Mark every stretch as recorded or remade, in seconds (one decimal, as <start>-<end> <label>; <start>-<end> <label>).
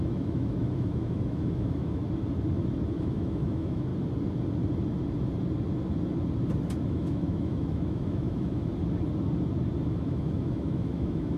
0.0-2.0 remade; 2.0-2.9 recorded; 2.9-3.9 remade; 3.9-6.8 recorded; 6.8-8.7 remade; 8.7-9.9 recorded; 9.9-11.4 remade